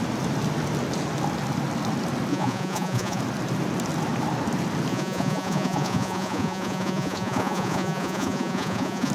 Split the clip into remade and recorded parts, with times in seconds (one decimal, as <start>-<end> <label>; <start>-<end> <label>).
0.0-2.3 recorded; 2.3-3.2 remade; 3.2-4.9 recorded; 4.9-9.1 remade